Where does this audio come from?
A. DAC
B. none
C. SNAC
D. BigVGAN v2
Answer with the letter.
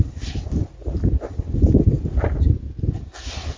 B